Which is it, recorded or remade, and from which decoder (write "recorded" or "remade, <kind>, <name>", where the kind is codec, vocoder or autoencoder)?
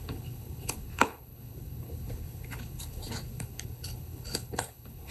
remade, codec, HILCodec